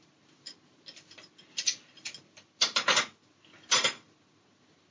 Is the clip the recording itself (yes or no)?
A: yes